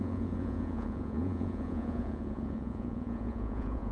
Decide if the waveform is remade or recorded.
remade